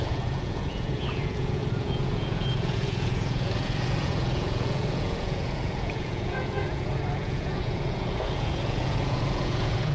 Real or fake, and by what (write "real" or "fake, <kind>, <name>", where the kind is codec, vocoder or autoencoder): fake, vocoder, Vocos